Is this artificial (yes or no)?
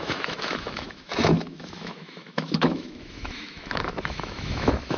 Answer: yes